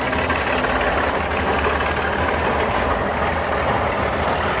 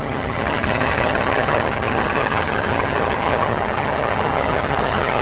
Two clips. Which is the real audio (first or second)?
first